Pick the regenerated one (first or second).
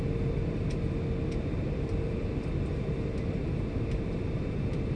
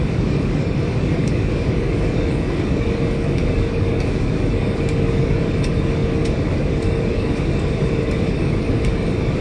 second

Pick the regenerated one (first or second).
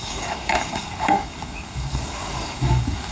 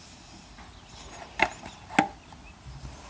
first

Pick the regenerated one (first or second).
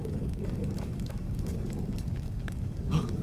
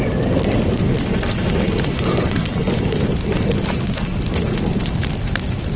first